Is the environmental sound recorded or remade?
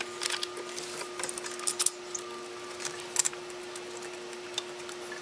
recorded